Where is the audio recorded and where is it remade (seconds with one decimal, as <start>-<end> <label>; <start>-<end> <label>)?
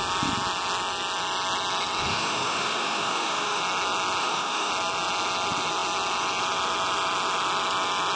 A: 0.0-2.1 recorded; 2.1-3.6 remade; 3.6-4.2 recorded; 4.2-4.7 remade; 4.7-8.2 recorded